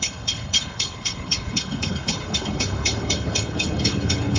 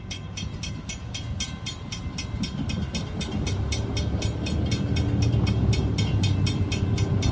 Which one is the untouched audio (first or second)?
second